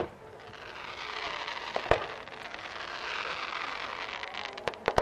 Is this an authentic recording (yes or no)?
yes